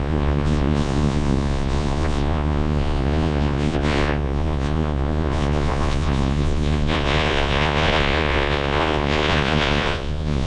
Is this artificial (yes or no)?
yes